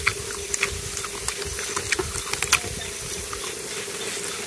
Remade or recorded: recorded